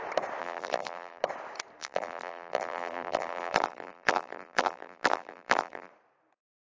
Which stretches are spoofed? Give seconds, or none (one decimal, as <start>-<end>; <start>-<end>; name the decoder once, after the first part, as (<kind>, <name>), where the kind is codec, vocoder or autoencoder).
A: 0.4-1.2 (vocoder, BigVGAN v2); 1.8-5.9